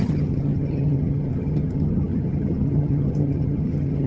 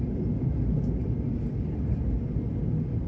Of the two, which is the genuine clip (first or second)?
second